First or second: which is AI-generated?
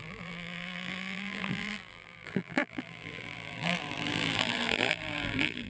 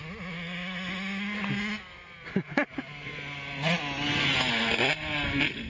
first